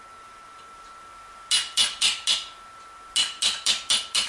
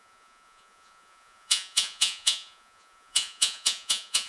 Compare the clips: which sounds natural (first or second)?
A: first